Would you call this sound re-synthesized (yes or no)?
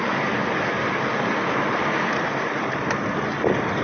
no